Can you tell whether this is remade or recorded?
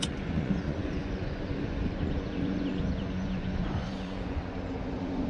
remade